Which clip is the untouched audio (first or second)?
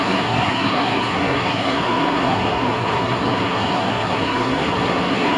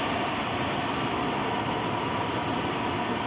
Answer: second